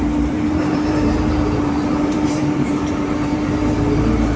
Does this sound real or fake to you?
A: fake